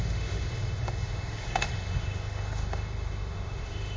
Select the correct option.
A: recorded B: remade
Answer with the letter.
B